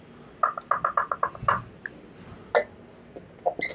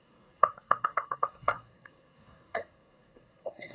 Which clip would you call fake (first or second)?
second